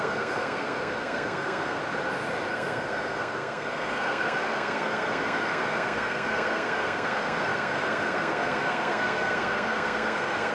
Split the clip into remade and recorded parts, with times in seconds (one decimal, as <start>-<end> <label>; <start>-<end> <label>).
0.0-1.8 remade; 1.8-2.5 recorded; 2.5-10.5 remade